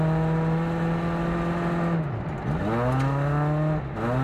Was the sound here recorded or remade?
recorded